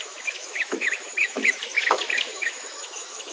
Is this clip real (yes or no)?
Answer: no